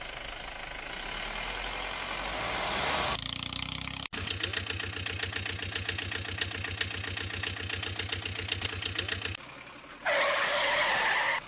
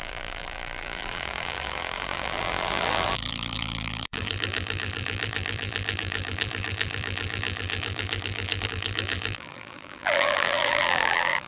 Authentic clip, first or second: first